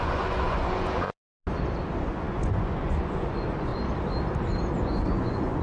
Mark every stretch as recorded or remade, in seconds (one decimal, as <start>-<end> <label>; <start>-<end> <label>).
0.0-1.3 remade; 1.3-2.0 recorded; 2.0-3.7 remade; 3.7-4.8 recorded; 4.8-5.6 remade